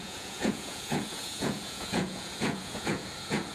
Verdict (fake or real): fake